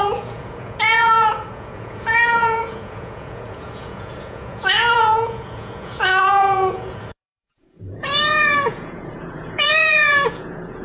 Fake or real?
fake